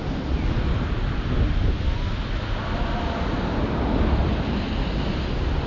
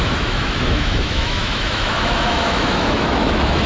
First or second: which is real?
first